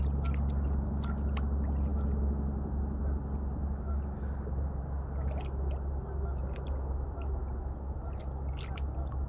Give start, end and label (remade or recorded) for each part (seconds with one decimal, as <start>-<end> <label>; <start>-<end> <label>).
0.0-9.3 recorded